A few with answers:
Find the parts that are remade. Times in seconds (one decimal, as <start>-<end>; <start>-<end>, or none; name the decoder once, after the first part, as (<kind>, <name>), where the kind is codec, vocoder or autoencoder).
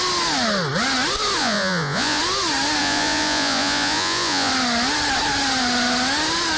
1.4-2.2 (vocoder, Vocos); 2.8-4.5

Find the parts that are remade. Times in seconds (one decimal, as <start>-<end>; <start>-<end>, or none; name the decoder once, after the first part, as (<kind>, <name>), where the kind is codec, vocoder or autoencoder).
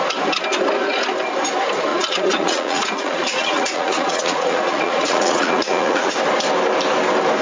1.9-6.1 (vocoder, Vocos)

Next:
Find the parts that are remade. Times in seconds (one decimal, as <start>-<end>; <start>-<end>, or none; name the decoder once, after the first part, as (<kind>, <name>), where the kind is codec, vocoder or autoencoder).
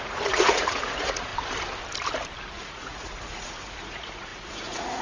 0.0-1.3 (vocoder, Vocos); 2.6-5.0